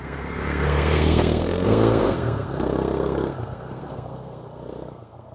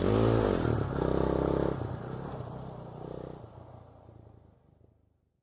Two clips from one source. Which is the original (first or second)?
second